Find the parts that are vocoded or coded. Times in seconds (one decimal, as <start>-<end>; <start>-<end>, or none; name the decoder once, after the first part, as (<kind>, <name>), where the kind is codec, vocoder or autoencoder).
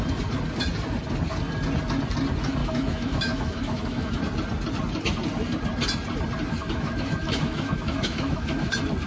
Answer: 2.6-4.2 (autoencoder, DAC-VAE); 6.6-8.7